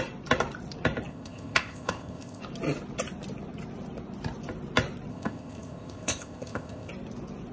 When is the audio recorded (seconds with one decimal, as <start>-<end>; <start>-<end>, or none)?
0.0-1.1; 2.4-5.1; 6.9-7.5